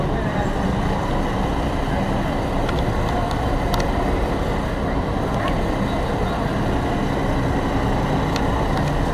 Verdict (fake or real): real